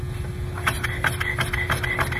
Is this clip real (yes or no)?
yes